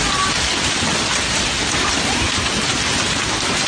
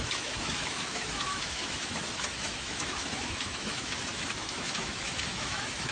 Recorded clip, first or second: first